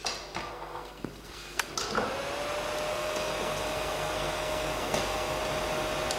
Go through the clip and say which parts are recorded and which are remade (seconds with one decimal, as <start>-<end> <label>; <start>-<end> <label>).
0.0-0.4 recorded; 0.4-1.7 remade; 1.7-2.9 recorded; 2.9-5.4 remade; 5.4-6.2 recorded